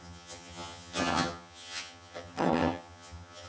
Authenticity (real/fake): fake